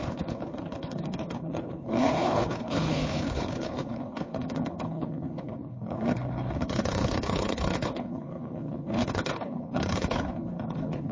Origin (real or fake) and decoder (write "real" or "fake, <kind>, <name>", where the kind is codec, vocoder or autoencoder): fake, codec, HILCodec